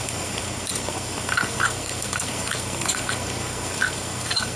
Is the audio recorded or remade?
remade